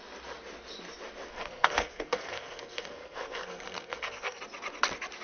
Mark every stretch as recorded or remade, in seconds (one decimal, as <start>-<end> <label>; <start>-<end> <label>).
0.0-1.3 recorded; 1.3-4.4 remade; 4.4-5.2 recorded